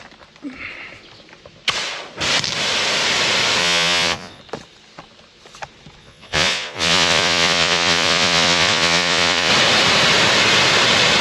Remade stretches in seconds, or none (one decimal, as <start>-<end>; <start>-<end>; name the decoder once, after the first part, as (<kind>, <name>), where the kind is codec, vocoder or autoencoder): 3.6-4.4 (vocoder, Vocos); 6.0-9.5

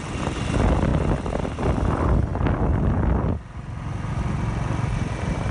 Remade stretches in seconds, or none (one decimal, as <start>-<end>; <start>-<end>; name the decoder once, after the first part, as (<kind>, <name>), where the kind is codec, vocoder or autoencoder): none